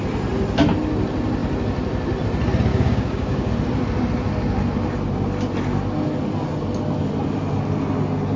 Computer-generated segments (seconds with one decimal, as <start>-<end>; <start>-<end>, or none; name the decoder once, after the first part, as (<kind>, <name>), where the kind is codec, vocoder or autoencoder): 2.7-3.5 (codec, DAC)